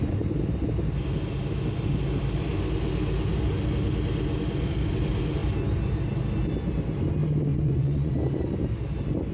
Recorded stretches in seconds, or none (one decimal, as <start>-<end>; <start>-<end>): 0.0-7.5; 8.1-9.3